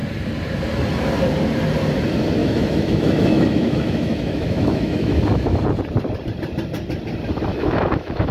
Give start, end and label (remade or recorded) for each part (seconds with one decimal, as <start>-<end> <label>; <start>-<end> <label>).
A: 0.0-2.4 recorded; 2.4-5.6 remade; 5.6-7.5 recorded; 7.5-8.3 remade